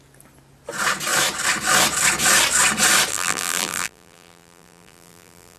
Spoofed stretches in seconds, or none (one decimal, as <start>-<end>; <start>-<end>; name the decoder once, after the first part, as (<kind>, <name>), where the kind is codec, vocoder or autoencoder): 3.1-5.6 (vocoder, BigVGAN v2)